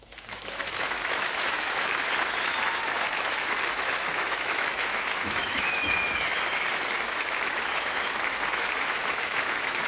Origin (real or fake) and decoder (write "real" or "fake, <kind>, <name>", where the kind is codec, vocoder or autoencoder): fake, autoencoder, DAC-VAE